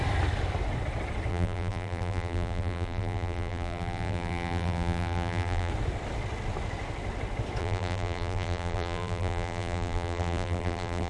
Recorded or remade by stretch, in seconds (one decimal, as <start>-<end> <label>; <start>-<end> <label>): 0.0-1.3 recorded; 1.3-5.7 remade; 5.7-7.6 recorded; 7.6-11.1 remade